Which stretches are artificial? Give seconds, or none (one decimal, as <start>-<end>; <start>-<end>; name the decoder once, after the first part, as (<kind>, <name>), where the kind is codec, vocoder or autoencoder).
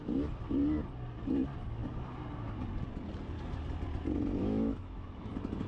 4.4-5.3 (autoencoder, DAC-VAE)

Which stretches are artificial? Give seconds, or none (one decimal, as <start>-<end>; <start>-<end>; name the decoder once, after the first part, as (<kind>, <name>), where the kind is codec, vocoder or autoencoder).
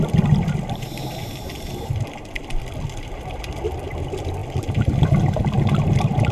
none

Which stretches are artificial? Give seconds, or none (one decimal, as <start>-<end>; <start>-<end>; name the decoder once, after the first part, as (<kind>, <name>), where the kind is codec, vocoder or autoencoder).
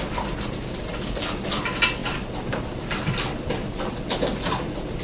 none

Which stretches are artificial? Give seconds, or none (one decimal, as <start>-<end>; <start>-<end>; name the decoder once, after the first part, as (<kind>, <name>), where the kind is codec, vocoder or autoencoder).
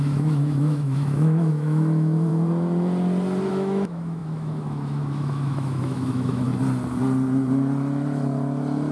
0.0-2.3 (autoencoder, DAC-VAE); 3.5-6.5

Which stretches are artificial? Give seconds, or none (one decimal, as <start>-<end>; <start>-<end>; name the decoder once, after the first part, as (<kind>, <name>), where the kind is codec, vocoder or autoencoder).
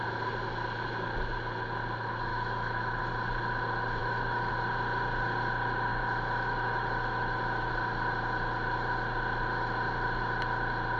2.3-3.0 (autoencoder, DAC-VAE); 4.0-4.5; 5.9-7.7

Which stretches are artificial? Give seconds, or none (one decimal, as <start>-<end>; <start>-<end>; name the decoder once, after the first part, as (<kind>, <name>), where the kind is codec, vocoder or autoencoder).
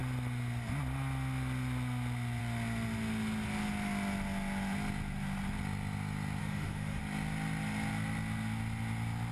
6.4-7.0 (autoencoder, DAC-VAE)